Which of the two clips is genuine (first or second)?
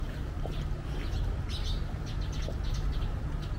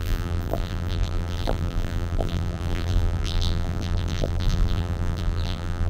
first